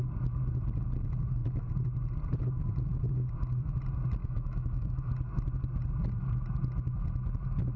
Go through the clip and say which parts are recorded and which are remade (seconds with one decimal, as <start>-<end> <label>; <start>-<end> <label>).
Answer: 0.0-4.2 recorded; 4.2-5.1 remade; 5.1-7.8 recorded